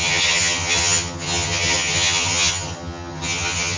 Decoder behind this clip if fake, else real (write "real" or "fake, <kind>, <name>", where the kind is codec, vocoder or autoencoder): fake, vocoder, HiFi-GAN